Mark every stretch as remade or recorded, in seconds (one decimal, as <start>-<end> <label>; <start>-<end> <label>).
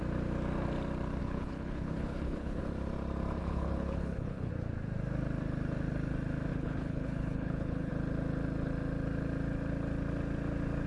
0.0-1.2 recorded; 1.2-2.6 remade; 2.6-3.4 recorded; 3.4-4.5 remade; 4.5-6.5 recorded; 6.5-7.9 remade; 7.9-10.9 recorded